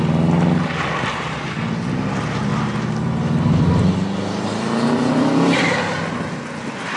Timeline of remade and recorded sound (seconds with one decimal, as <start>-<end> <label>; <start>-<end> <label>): 0.0-7.0 recorded